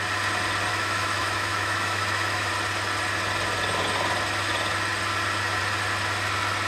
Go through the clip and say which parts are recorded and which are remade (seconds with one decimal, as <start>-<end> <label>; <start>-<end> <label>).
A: 0.0-0.7 recorded; 0.7-2.5 remade; 2.5-6.7 recorded